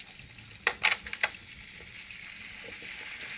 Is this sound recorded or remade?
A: recorded